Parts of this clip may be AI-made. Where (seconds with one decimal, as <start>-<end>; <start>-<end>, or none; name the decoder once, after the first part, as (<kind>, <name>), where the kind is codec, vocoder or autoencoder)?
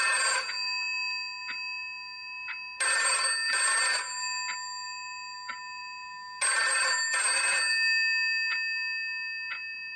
none